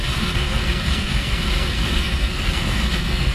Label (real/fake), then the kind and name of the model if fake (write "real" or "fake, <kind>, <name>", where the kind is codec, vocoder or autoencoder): fake, codec, SNAC